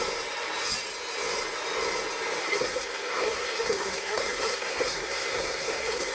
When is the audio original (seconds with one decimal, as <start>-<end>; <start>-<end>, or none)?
0.0-2.4